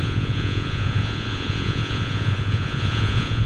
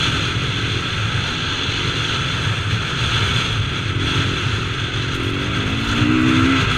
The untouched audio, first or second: second